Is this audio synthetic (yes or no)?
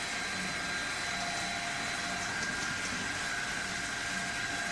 no